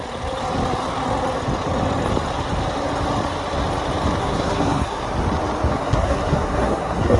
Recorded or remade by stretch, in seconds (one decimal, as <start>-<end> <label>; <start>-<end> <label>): 0.0-4.2 recorded; 4.2-5.0 remade; 5.0-5.7 recorded; 5.7-7.2 remade